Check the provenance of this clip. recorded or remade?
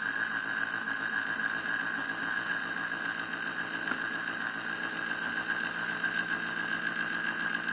recorded